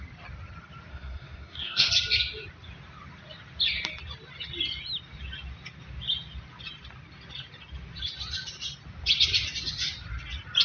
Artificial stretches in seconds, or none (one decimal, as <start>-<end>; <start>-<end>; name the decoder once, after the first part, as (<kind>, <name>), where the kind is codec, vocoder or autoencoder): 0.9-1.9 (codec, SNAC)